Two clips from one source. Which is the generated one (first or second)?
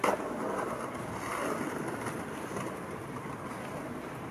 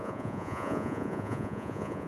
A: second